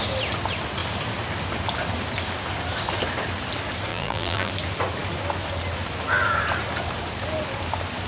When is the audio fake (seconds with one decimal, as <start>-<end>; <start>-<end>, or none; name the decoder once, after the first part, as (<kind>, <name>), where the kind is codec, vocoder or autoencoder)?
3.9-4.5 (vocoder, BigVGAN v2)